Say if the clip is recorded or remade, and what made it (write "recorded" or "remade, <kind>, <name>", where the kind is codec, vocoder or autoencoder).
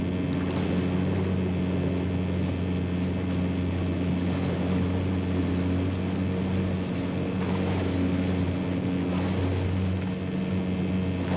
recorded